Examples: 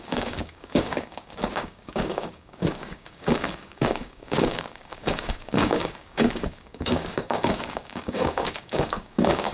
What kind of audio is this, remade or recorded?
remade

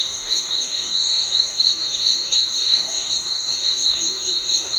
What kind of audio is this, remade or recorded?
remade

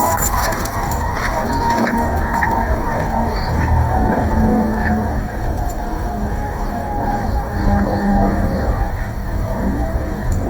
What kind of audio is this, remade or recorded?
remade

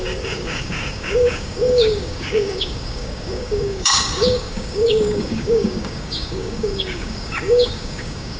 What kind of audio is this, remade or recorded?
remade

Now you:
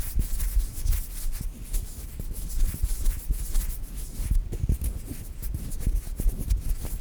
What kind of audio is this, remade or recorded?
recorded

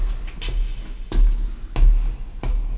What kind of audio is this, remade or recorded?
recorded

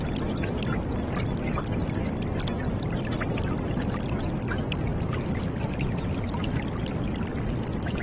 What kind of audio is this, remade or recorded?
recorded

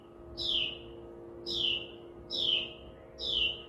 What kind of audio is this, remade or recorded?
recorded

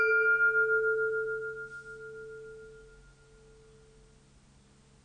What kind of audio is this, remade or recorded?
recorded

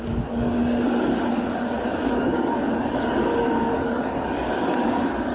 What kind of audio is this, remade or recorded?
remade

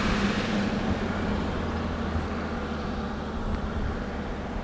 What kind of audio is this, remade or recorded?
recorded